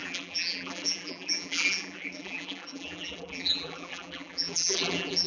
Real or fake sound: fake